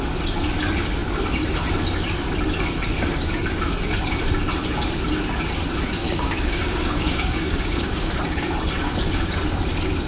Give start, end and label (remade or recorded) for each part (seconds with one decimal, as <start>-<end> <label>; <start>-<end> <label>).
0.0-6.0 recorded; 6.0-8.1 remade; 8.1-10.1 recorded